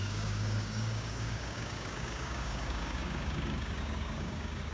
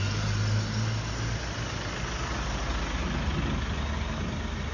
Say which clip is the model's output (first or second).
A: first